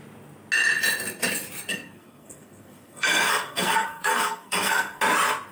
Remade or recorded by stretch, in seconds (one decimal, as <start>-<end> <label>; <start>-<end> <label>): 0.0-1.7 recorded; 1.7-5.0 remade; 5.0-5.5 recorded

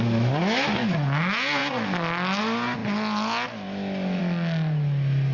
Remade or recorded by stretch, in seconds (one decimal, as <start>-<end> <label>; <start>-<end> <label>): 0.0-5.3 recorded

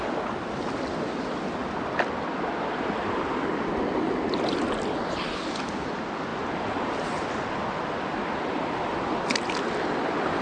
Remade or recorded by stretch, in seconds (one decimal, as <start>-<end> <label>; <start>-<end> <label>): 0.0-10.4 recorded

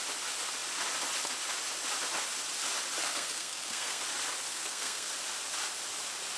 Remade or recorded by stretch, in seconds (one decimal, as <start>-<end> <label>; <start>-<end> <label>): 0.0-3.0 recorded; 3.0-4.0 remade; 4.0-4.5 recorded; 4.5-5.1 remade; 5.1-6.4 recorded